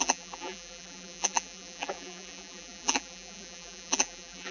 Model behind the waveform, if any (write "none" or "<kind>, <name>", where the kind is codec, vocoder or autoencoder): vocoder, BigVGAN v2